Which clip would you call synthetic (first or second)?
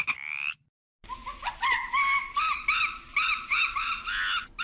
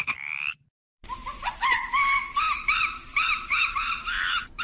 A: second